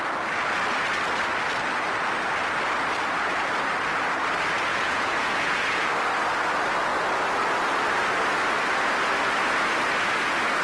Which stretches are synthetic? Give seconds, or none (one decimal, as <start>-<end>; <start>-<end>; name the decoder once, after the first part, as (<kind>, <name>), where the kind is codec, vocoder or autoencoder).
4.7-5.9 (vocoder, Vocos)